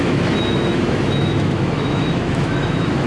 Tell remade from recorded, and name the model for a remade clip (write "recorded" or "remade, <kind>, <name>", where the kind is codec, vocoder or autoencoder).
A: remade, autoencoder, DAC-VAE